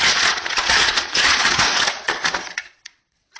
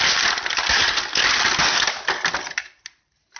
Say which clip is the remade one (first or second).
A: first